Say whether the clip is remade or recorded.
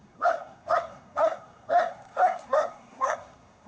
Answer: remade